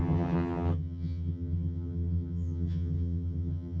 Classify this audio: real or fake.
fake